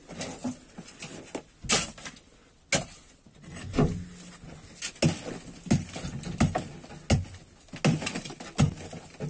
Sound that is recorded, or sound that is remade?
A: recorded